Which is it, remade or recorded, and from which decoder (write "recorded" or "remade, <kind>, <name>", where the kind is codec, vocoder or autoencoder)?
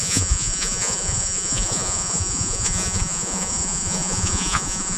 remade, vocoder, Vocos